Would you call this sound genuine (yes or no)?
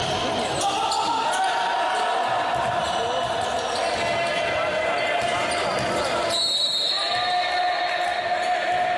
yes